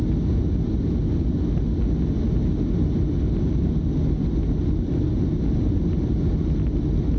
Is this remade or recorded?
recorded